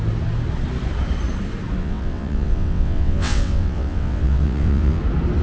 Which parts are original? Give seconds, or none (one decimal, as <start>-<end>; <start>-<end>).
0.0-1.8; 5.0-5.4